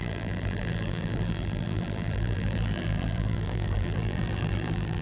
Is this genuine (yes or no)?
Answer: no